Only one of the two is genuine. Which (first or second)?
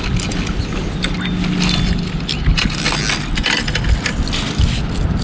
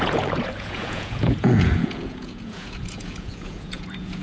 first